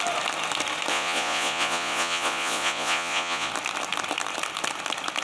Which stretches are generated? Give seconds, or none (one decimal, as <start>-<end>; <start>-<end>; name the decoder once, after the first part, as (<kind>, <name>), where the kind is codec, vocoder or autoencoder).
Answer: 0.9-3.5 (vocoder, Vocos)

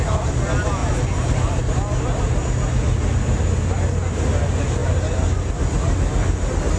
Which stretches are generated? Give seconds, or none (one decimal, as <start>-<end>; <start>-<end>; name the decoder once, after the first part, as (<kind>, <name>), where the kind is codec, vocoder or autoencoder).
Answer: none

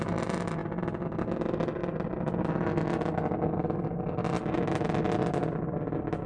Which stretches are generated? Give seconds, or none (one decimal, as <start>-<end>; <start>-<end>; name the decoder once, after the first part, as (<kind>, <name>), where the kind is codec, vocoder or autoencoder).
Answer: none

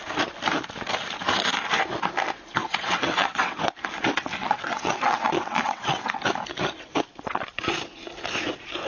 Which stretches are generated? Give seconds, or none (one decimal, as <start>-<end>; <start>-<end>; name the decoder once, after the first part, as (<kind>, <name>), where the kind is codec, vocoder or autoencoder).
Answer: 2.6-3.6 (vocoder, WaveNeXt); 4.4-6.1